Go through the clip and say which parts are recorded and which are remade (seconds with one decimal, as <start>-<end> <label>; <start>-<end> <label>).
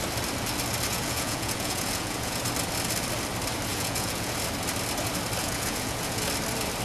0.0-0.9 recorded; 0.9-2.4 remade; 2.4-3.7 recorded; 3.7-4.3 remade; 4.3-5.4 recorded; 5.4-6.2 remade; 6.2-6.8 recorded